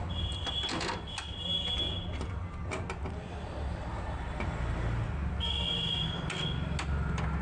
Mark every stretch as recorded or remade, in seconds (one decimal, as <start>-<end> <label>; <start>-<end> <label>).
0.0-7.4 recorded